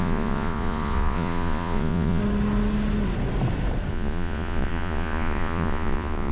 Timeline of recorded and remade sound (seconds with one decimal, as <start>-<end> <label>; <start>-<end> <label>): 0.0-2.2 remade; 2.2-3.9 recorded; 3.9-6.3 remade